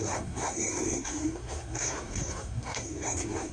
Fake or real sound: fake